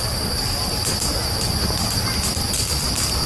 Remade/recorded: recorded